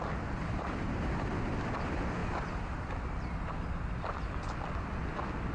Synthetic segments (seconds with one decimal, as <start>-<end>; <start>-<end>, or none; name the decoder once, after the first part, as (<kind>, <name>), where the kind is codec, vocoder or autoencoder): none

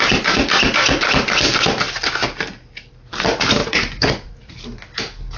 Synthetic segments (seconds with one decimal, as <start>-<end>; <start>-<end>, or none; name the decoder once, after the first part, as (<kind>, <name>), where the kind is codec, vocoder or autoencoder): 3.6-4.5 (vocoder, Vocos)

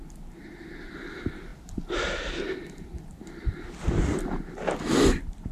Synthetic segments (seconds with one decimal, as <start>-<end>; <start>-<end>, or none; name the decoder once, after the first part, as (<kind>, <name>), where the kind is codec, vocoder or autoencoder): none